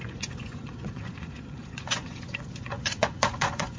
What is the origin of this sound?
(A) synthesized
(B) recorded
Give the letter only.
A